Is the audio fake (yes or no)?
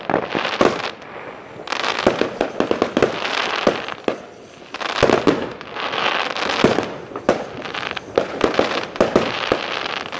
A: no